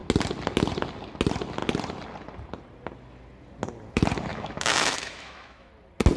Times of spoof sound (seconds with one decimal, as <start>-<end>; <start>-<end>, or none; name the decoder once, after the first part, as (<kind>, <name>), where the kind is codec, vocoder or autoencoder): 4.3-5.7 (autoencoder, DAC-VAE)